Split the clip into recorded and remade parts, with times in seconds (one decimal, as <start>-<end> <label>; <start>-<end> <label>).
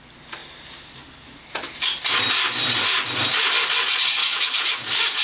0.0-4.2 recorded; 4.2-4.8 remade; 4.8-5.2 recorded